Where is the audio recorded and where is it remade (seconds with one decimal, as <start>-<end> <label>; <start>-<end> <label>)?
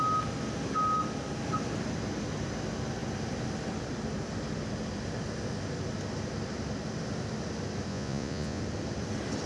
0.0-7.9 recorded; 7.9-8.6 remade; 8.6-9.5 recorded